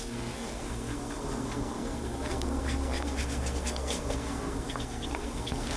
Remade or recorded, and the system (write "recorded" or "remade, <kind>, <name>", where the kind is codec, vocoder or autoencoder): remade, codec, SNAC